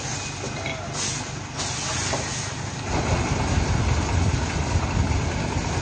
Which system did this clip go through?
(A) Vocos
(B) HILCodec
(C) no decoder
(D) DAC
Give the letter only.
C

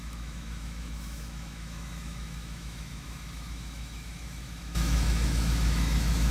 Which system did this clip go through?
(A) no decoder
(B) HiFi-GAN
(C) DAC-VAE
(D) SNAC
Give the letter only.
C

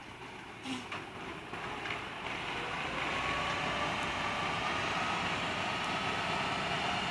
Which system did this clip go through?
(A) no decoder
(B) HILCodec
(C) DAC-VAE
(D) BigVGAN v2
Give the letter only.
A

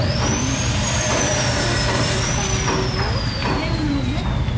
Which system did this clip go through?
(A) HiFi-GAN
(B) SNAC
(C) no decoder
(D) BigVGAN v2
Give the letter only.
C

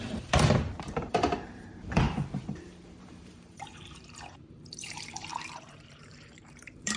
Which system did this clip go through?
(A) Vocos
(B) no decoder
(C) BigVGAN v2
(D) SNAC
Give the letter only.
C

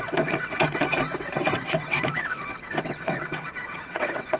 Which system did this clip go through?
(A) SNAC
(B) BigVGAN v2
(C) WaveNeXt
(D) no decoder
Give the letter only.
C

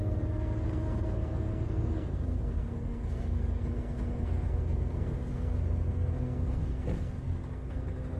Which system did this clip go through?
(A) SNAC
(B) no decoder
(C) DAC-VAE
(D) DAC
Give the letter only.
A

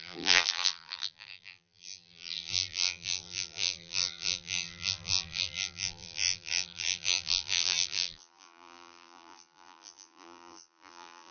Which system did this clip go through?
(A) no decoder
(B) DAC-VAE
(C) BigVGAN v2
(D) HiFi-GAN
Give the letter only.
C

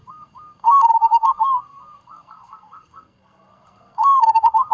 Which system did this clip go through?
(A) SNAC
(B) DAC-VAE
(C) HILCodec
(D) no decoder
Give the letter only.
A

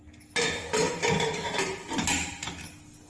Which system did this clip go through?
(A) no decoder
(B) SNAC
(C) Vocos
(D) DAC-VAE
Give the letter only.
A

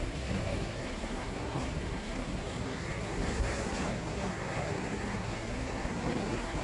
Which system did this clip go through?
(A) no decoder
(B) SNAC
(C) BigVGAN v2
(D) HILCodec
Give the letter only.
B